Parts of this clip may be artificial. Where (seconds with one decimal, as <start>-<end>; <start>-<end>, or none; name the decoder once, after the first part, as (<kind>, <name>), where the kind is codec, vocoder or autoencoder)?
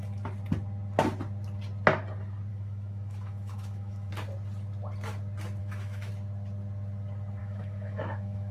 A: 2.5-4.1 (autoencoder, DAC-VAE); 5.6-6.1; 7.4-8.5